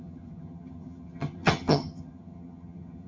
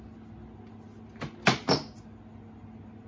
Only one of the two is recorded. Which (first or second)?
second